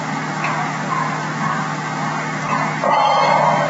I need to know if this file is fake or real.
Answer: real